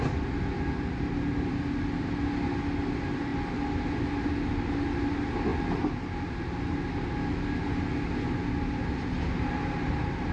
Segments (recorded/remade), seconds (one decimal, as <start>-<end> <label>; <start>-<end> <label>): 0.0-10.3 recorded